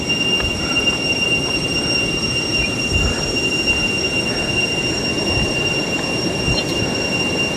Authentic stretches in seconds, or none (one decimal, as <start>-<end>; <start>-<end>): 0.0-7.6